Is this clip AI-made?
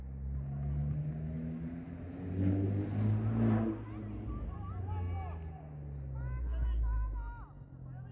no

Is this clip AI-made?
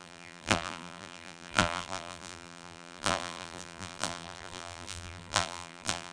yes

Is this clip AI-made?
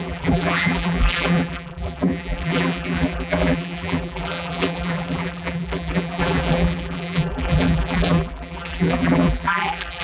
yes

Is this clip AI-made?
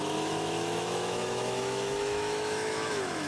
yes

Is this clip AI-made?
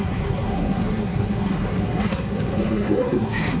yes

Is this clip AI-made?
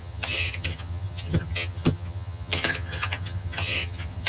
yes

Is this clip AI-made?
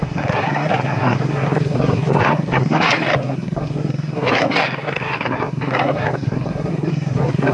yes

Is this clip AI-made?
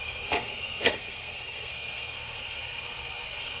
yes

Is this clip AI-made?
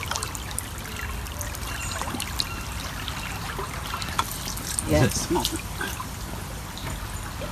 no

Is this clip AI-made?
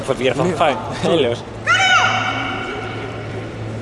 yes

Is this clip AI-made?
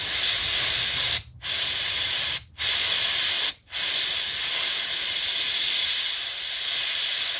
no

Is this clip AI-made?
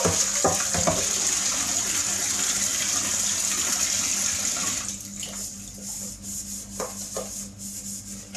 no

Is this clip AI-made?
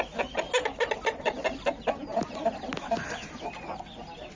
no